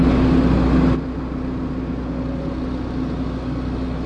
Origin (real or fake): real